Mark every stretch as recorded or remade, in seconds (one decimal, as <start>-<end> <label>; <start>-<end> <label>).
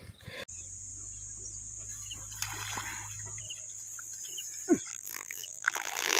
0.0-4.9 recorded; 4.9-6.2 remade